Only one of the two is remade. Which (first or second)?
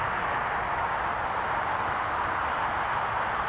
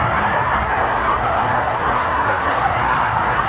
second